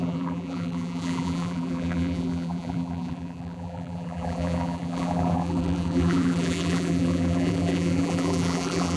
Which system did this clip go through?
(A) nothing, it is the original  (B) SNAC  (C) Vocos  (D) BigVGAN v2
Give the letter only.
D